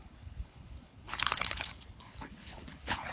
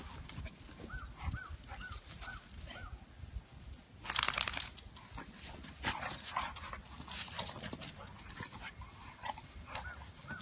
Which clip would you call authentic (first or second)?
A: second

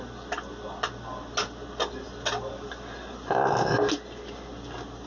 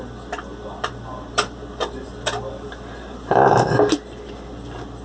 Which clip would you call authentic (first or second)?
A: first